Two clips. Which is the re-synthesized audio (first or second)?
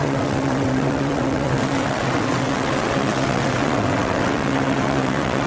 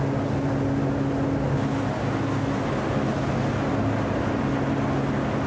first